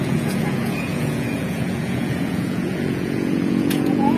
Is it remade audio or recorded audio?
remade